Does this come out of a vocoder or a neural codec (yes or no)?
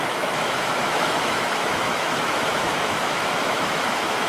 yes